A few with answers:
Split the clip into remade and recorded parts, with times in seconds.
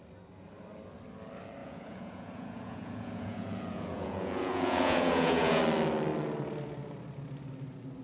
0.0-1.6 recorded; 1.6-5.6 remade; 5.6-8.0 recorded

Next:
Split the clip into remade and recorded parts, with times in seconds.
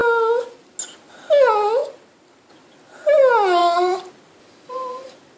0.0-1.8 recorded; 1.8-2.5 remade; 2.5-3.6 recorded; 3.6-4.1 remade; 4.1-5.4 recorded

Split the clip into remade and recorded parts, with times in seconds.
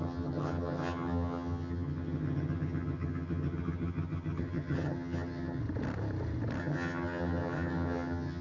0.0-5.6 remade; 5.6-6.6 recorded; 6.6-8.4 remade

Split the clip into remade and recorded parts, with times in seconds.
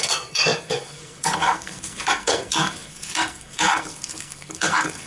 0.0-5.1 remade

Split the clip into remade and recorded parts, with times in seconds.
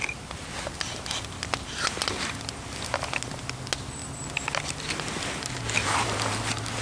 0.0-6.8 recorded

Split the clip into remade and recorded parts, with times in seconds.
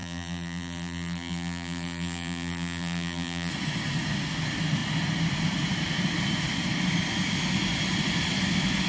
0.0-3.5 remade; 3.5-8.9 recorded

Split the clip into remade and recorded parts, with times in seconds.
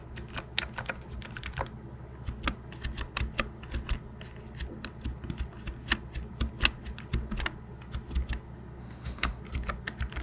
0.0-8.8 recorded; 8.8-9.4 remade; 9.4-10.2 recorded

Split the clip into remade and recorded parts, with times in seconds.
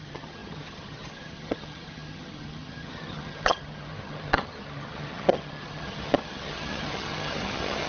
0.0-7.9 remade